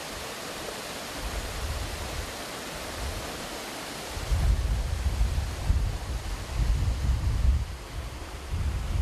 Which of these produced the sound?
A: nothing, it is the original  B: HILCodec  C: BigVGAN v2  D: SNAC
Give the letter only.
A